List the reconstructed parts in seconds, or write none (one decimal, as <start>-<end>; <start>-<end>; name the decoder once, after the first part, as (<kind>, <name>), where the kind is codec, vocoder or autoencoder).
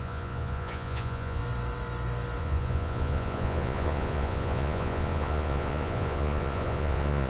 0.0-1.4 (vocoder, Vocos); 2.4-7.3